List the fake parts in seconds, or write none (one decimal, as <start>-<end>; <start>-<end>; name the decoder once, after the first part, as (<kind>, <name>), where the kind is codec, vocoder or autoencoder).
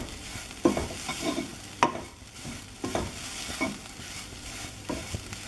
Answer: 1.5-4.8 (vocoder, BigVGAN v2)